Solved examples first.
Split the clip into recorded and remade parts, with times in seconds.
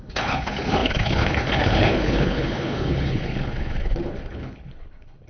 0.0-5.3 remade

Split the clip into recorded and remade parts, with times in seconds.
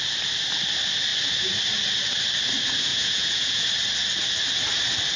0.0-2.9 recorded; 2.9-3.7 remade; 3.7-5.2 recorded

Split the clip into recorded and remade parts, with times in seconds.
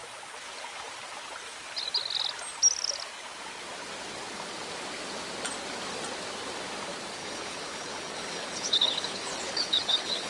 0.0-7.2 recorded; 7.2-10.3 remade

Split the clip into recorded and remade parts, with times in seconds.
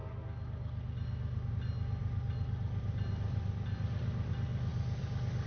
0.0-2.0 recorded; 2.0-4.3 remade; 4.3-4.7 recorded; 4.7-5.5 remade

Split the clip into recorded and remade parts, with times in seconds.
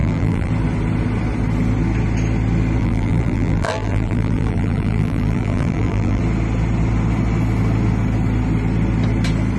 0.0-0.5 remade; 0.5-2.8 recorded; 2.8-6.2 remade; 6.2-9.6 recorded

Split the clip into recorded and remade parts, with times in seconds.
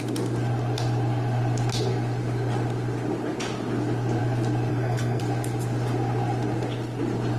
0.0-4.7 recorded; 4.7-5.2 remade; 5.2-7.4 recorded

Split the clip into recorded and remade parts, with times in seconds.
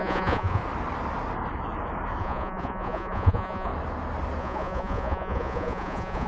0.0-0.6 remade; 0.6-2.2 recorded; 2.2-3.7 remade; 3.7-4.4 recorded; 4.4-6.3 remade